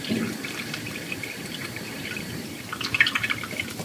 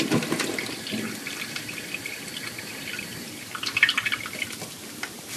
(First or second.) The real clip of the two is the second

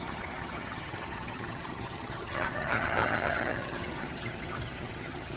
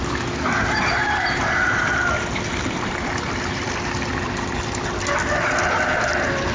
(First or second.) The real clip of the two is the second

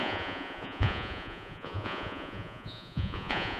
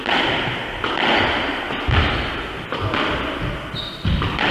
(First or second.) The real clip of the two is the second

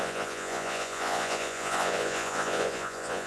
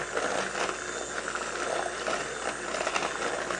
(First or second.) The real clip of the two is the second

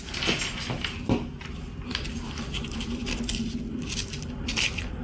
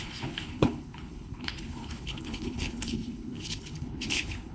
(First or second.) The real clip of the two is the first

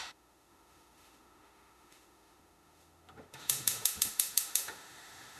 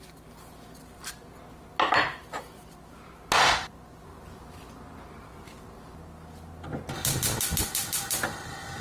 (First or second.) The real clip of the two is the second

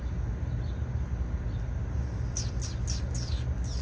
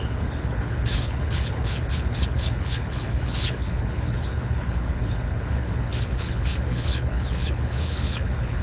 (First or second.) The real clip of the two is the first